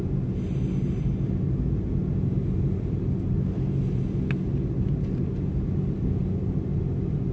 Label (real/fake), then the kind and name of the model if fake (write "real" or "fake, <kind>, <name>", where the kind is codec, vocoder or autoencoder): real